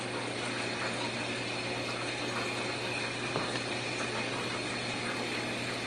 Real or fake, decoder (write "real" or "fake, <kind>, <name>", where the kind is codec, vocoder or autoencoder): real